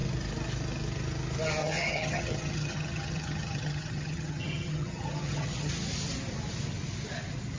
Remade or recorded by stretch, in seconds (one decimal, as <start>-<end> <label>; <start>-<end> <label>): 0.0-1.6 recorded; 1.6-5.7 remade; 5.7-7.6 recorded